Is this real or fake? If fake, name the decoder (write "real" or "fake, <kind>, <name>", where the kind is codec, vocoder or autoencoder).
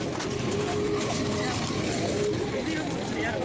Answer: real